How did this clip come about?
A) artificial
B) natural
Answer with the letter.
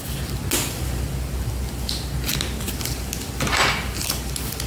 B